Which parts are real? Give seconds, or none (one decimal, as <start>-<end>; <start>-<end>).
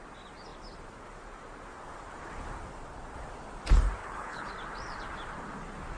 0.0-4.0; 4.5-6.0